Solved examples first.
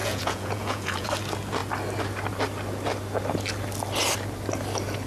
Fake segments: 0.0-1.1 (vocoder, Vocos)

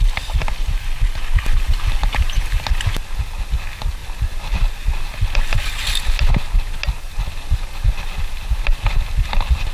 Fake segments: none

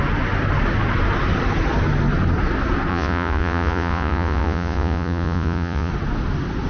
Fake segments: 2.9-5.9 (vocoder, Vocos)

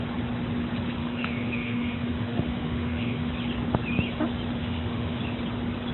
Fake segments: 1.0-3.3 (autoencoder, DAC-VAE); 4.6-5.2

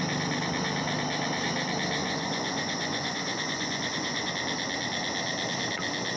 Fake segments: 2.0-4.3 (vocoder, Vocos)

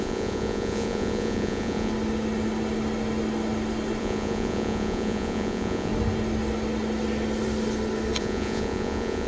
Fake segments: 0.0-1.9 (vocoder, Vocos); 4.0-5.9; 8.2-9.3

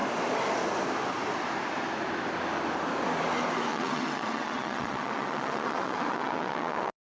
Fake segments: 3.7-7.1 (vocoder, WaveNeXt)